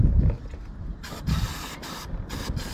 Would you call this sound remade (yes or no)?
no